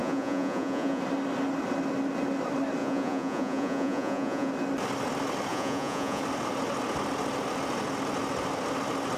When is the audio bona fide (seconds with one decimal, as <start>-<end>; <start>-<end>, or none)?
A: 1.0-2.8; 4.5-5.5; 6.2-9.2